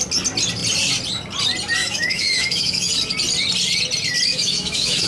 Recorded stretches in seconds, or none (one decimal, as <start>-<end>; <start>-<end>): 0.0-1.8; 2.9-4.3